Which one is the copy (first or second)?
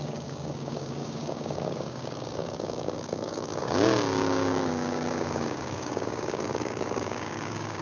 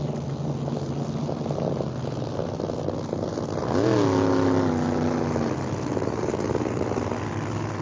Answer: first